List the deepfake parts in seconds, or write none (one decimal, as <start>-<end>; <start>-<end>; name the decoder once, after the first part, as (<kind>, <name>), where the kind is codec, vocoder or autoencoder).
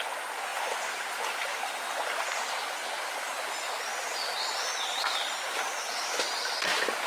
none